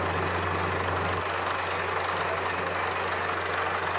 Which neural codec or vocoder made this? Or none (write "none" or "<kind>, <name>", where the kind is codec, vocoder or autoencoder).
none